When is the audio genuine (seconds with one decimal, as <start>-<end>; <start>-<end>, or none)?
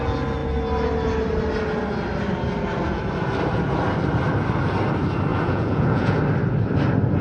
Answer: 0.0-5.3; 6.2-7.2